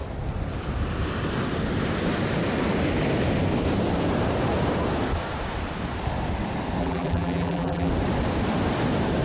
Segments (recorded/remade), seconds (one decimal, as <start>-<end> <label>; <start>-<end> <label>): 0.0-6.8 recorded; 6.8-7.9 remade; 7.9-9.2 recorded